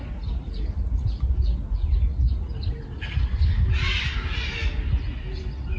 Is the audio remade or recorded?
recorded